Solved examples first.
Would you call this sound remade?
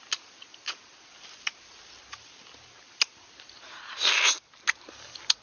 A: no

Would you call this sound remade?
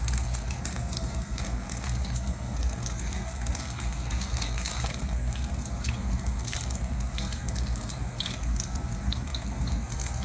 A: yes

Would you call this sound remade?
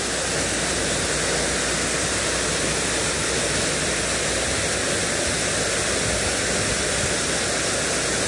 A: no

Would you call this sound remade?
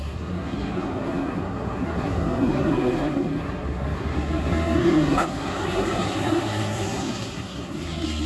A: yes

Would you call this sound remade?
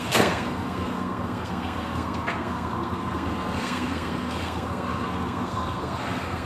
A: yes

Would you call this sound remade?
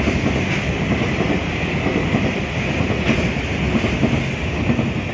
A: no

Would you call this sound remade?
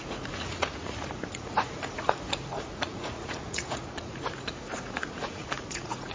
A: yes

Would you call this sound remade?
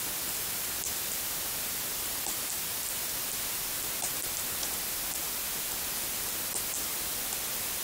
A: no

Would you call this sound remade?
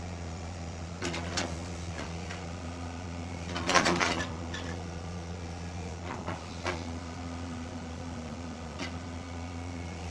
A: yes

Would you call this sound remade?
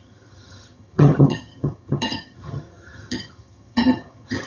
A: yes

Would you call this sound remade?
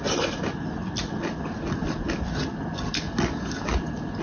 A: no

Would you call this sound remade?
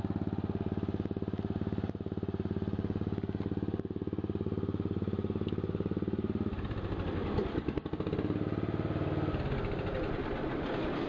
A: no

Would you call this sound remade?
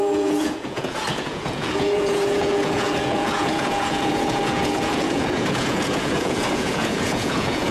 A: yes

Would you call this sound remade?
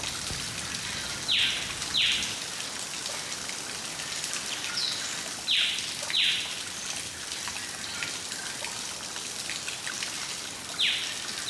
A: no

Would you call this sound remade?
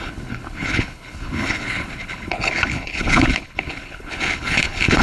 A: yes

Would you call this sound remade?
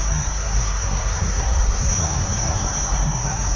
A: yes